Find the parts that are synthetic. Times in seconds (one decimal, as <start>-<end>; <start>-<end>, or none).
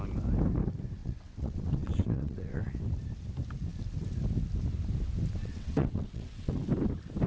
1.0-2.7; 5.4-6.5